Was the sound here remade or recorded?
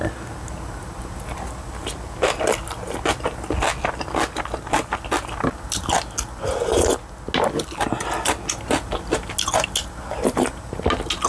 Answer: recorded